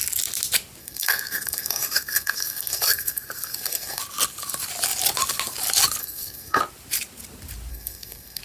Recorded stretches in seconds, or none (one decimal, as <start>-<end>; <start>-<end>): 0.0-0.8; 4.0-6.0; 6.6-7.7